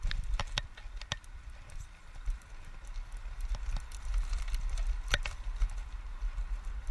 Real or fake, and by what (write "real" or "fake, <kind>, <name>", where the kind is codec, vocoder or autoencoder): real